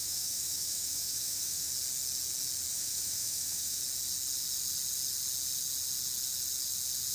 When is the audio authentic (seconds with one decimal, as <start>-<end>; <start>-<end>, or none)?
1.7-2.7; 3.8-7.1